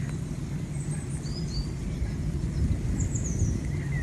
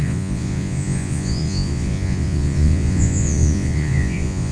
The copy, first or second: second